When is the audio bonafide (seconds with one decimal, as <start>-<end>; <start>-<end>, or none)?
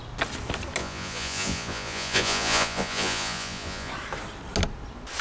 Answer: 0.0-0.8; 3.9-5.2